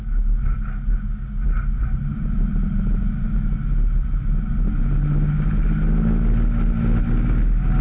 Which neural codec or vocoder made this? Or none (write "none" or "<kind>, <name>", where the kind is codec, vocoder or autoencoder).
none